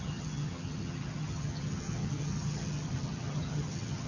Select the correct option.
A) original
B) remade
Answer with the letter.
B